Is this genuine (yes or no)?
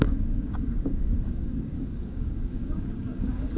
no